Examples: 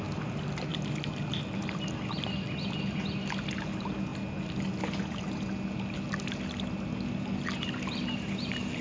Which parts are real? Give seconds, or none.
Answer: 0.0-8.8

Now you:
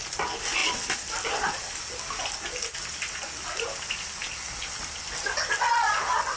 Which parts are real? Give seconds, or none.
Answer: 0.0-6.4

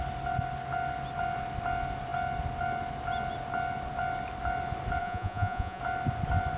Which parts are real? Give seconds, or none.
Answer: 0.0-5.0; 5.8-6.6